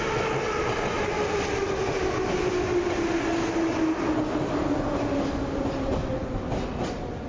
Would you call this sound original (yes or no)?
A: yes